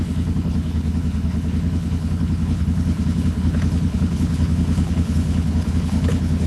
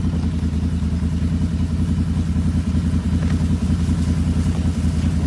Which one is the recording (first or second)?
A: second